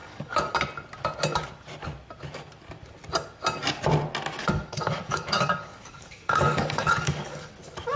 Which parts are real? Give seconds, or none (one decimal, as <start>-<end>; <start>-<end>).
0.5-4.4; 7.5-8.0